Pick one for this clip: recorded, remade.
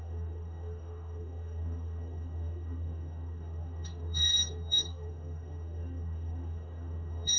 remade